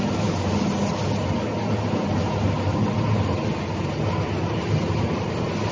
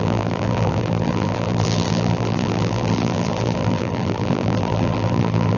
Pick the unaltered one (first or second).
first